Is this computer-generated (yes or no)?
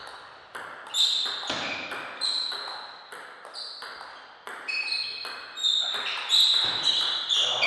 no